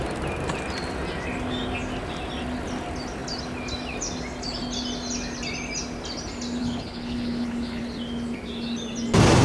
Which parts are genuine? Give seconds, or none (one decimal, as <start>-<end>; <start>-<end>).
0.0-6.6; 7.8-9.4